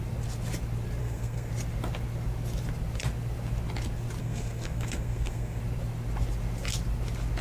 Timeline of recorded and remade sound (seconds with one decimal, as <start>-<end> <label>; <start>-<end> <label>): 0.0-1.0 recorded; 1.0-1.5 remade; 1.5-4.2 recorded; 4.2-5.6 remade; 5.6-7.4 recorded